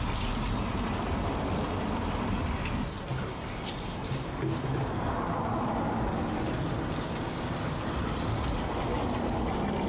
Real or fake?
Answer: real